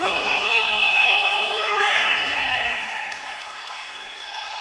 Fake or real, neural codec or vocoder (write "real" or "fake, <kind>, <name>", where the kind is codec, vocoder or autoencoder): fake, codec, SNAC